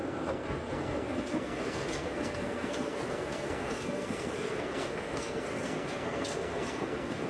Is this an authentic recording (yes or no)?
no